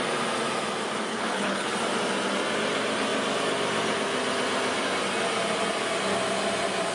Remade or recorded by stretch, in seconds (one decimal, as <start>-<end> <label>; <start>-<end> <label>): 0.0-1.1 recorded; 1.1-1.8 remade; 1.8-6.9 recorded